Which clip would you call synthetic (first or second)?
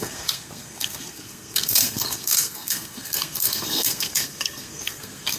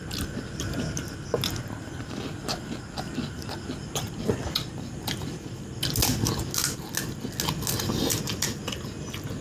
first